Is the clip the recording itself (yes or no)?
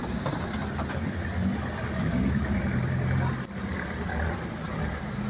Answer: no